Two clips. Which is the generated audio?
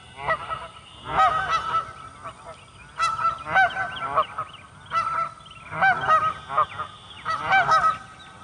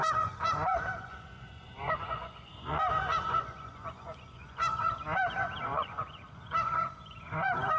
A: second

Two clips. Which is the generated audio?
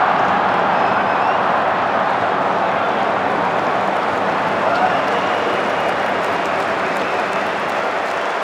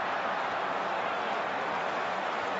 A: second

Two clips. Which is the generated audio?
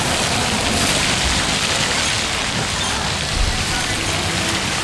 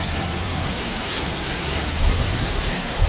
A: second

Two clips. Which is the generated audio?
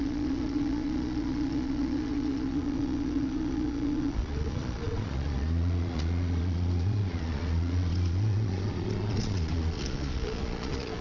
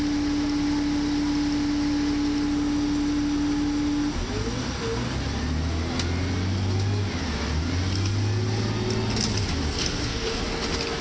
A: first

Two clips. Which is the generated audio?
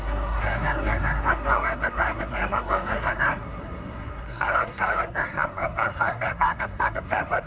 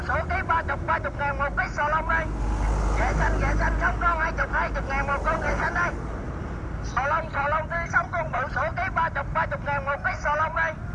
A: first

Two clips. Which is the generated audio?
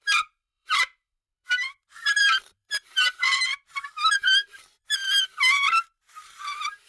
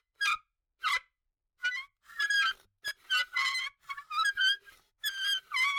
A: first